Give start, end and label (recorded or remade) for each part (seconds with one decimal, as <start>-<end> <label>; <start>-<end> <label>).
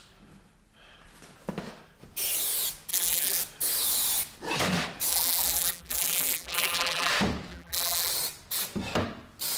0.0-2.9 recorded; 2.9-3.4 remade; 3.4-5.1 recorded; 5.1-7.1 remade; 7.1-7.5 recorded; 7.5-8.1 remade; 8.1-9.6 recorded